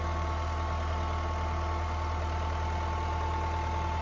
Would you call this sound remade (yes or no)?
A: no